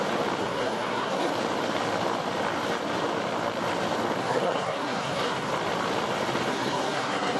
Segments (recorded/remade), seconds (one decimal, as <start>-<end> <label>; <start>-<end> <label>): 0.0-0.4 recorded; 0.4-1.3 remade; 1.3-4.2 recorded; 4.2-5.5 remade; 5.5-6.5 recorded; 6.5-7.4 remade